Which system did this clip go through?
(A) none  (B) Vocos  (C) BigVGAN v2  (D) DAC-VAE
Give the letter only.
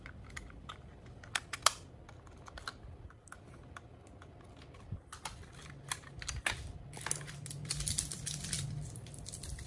A